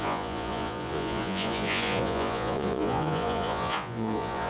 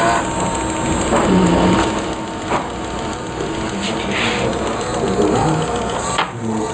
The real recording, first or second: second